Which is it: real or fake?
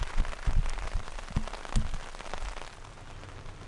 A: real